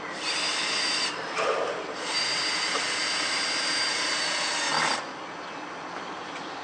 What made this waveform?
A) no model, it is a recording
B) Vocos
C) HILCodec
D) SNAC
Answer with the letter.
A